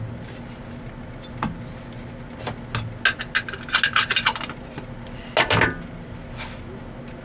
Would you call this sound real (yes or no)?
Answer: yes